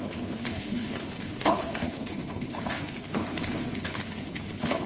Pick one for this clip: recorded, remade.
remade